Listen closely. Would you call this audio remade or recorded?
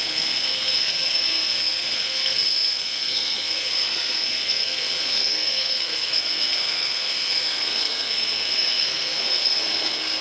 remade